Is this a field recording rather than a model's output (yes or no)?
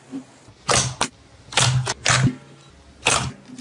yes